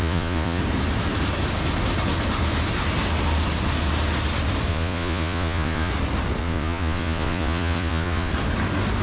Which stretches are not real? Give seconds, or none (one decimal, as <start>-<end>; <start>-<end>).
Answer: 0.0-0.6; 4.7-5.9; 6.4-8.3